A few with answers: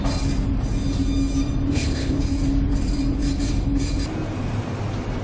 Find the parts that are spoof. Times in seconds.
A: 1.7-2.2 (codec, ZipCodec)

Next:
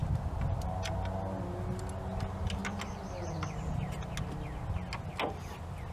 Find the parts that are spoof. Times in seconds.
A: none

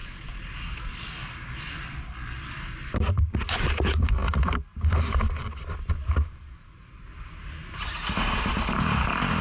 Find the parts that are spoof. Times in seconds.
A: none